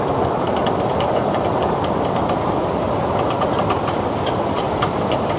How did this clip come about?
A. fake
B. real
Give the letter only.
A